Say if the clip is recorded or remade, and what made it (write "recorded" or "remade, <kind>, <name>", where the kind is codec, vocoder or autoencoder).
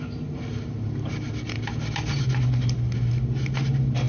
recorded